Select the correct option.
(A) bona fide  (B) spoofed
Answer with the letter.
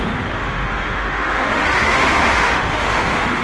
B